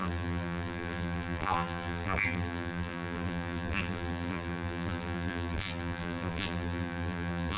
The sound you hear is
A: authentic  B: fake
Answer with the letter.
B